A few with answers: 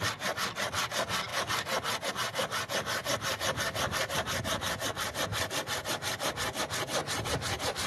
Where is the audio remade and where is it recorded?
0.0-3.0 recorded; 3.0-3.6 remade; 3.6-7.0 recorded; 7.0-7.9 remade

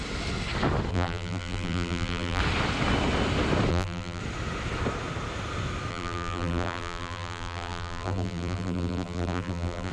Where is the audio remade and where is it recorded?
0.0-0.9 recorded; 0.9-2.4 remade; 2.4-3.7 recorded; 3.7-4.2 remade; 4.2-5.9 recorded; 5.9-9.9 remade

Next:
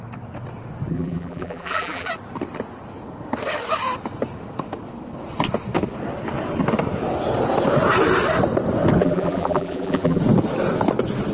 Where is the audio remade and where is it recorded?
0.0-0.9 recorded; 0.9-2.1 remade; 2.1-9.0 recorded; 9.0-10.2 remade; 10.2-11.3 recorded

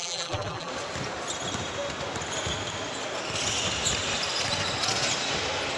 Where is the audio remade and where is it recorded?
0.0-0.7 remade; 0.7-5.8 recorded

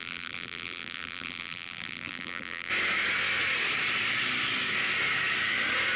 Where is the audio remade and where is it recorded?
0.0-2.7 remade; 2.7-6.0 recorded